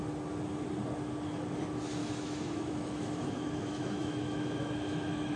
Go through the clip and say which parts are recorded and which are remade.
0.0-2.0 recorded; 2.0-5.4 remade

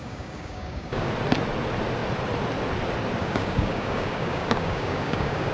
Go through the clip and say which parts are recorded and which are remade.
0.0-1.1 remade; 1.1-3.2 recorded; 3.2-5.5 remade

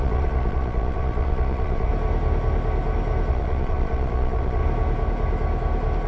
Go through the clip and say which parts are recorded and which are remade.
0.0-1.9 remade; 1.9-3.3 recorded; 3.3-4.6 remade; 4.6-6.1 recorded

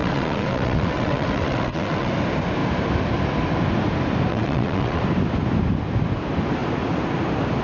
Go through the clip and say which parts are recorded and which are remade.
0.0-2.1 remade; 2.1-4.3 recorded; 4.3-5.0 remade; 5.0-7.6 recorded

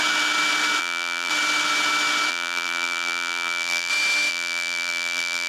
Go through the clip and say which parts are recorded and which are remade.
0.0-0.8 recorded; 0.8-1.3 remade; 1.3-2.3 recorded; 2.3-3.9 remade; 3.9-4.3 recorded; 4.3-5.5 remade